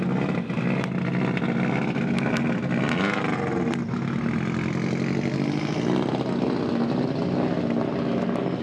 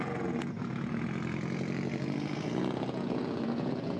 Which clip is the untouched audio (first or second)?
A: first